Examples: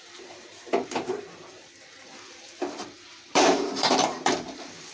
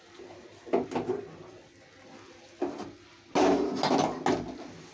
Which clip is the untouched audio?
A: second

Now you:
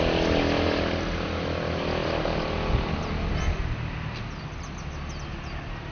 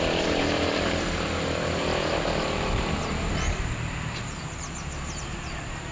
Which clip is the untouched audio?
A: first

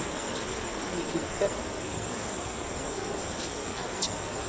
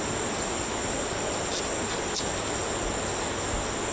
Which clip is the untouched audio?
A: second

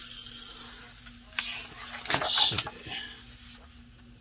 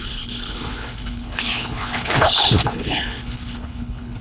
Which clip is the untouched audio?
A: first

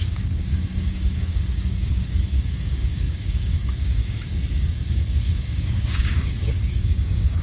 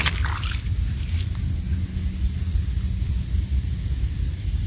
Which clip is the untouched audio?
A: second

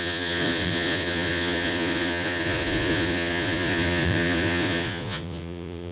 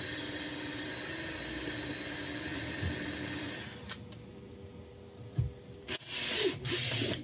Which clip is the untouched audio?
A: second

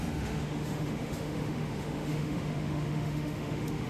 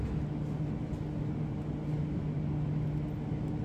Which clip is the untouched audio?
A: second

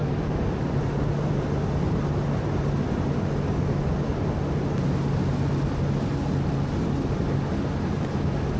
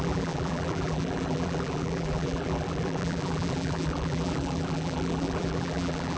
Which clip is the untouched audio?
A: first